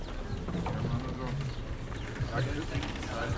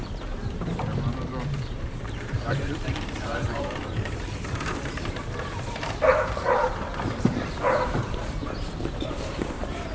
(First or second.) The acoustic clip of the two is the first